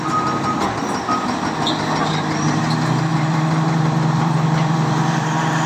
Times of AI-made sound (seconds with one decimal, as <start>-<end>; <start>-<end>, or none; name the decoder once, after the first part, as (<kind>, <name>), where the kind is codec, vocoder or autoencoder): 2.0-2.6 (vocoder, BigVGAN v2); 3.1-5.7